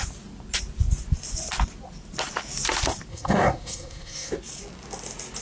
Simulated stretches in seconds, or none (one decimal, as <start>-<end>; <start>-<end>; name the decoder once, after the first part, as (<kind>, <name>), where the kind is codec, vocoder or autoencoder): 3.1-4.3 (codec, SNAC)